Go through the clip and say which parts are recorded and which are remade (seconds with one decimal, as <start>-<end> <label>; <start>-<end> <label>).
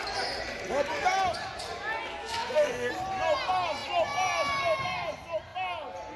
0.0-2.1 recorded; 2.1-2.9 remade; 2.9-6.2 recorded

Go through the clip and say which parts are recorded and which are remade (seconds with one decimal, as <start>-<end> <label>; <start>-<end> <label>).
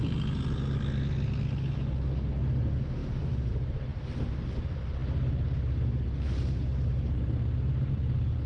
0.0-8.5 recorded